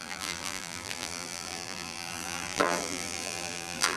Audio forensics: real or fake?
fake